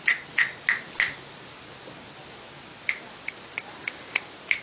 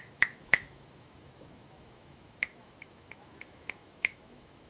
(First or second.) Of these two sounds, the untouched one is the first